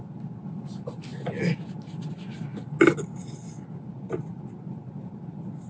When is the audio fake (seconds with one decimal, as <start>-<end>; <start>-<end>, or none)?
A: none